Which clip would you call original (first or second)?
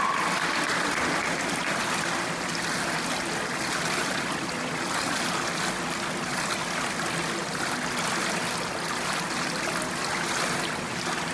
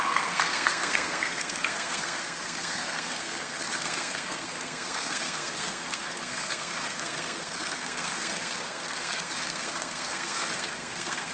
first